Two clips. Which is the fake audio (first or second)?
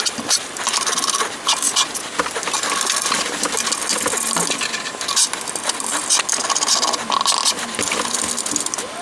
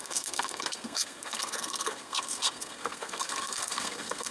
second